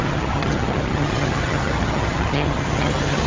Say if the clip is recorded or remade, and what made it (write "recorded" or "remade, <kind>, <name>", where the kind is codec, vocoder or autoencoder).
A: remade, vocoder, HiFi-GAN